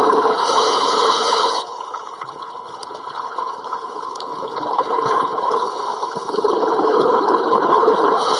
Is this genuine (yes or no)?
no